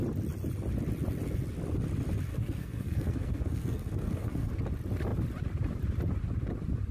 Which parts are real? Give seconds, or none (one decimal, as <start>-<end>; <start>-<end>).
0.0-2.3; 4.5-6.9